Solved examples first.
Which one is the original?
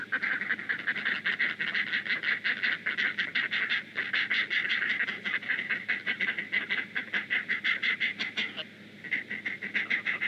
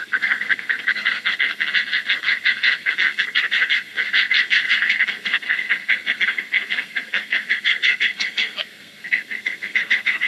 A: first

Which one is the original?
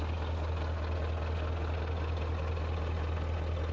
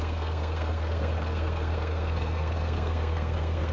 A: first